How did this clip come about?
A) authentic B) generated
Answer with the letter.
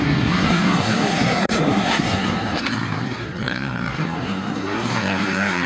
B